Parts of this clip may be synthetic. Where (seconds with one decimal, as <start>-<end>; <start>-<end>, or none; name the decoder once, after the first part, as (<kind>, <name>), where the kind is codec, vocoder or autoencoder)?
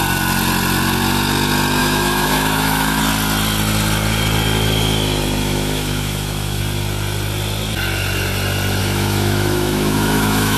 1.8-3.0 (autoencoder, DAC-VAE); 5.4-6.6; 8.8-10.6